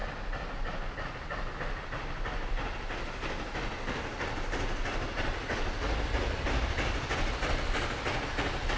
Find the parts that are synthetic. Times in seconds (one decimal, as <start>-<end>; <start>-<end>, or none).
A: none